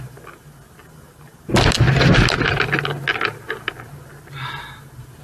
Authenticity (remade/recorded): recorded